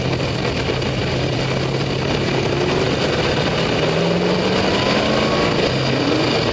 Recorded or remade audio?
recorded